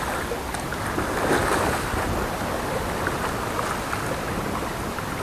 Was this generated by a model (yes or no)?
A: no